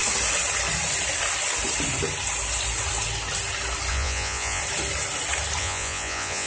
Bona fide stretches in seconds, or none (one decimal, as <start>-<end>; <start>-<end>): 0.0-3.9; 4.6-5.6